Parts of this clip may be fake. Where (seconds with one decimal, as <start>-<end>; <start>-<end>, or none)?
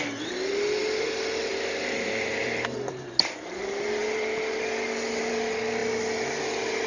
4.0-5.3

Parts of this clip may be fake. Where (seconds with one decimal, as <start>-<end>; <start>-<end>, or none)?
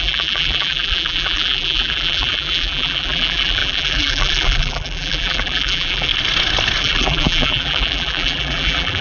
0.0-6.1; 6.8-9.0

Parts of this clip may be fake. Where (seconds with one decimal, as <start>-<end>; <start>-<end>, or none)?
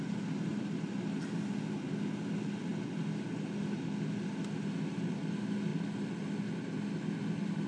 0.5-1.2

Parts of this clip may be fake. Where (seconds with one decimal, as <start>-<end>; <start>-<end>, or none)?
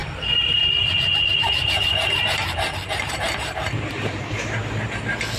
0.0-0.7; 1.4-4.6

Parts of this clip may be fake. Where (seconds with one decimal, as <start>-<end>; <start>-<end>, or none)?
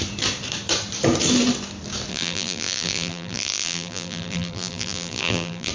2.1-5.7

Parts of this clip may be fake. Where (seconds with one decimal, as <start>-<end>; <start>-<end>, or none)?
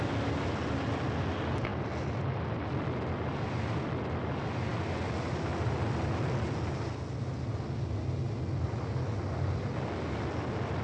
none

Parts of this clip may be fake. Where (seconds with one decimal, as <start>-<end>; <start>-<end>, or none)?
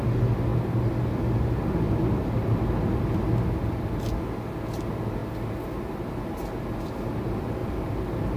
7.6-8.4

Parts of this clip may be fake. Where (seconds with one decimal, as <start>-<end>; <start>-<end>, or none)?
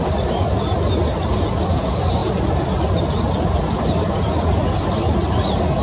0.0-2.2; 3.6-5.8